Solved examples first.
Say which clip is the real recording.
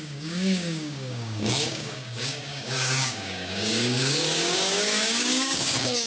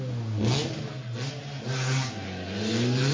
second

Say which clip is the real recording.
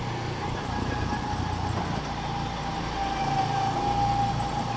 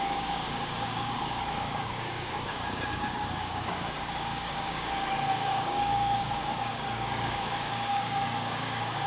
first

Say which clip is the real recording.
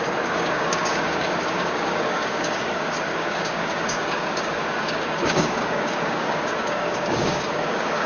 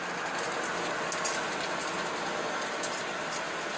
second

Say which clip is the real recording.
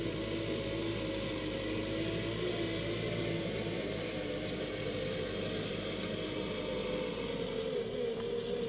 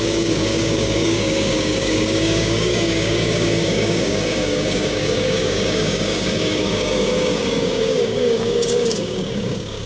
first